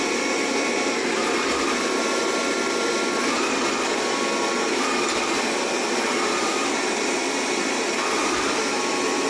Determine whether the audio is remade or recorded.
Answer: recorded